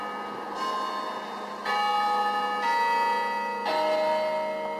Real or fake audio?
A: real